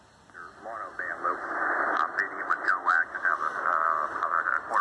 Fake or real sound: fake